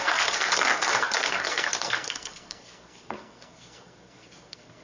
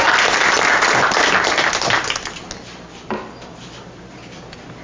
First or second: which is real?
second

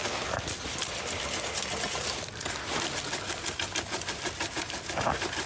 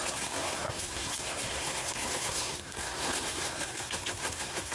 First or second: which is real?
first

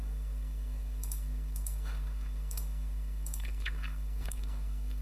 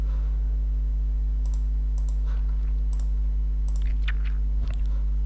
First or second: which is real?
second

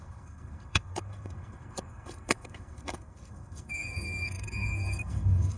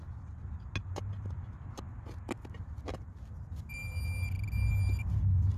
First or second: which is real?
second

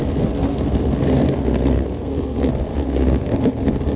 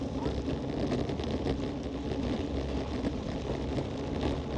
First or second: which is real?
second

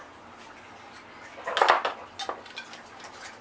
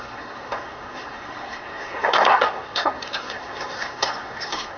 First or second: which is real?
first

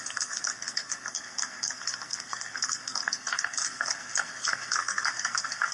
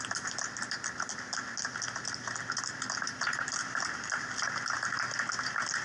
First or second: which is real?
second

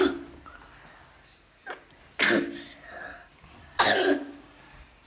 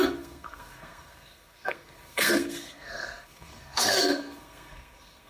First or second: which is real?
first